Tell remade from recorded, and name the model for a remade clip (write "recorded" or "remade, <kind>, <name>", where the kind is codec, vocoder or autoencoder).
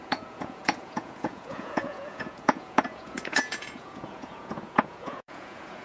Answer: remade, vocoder, Vocos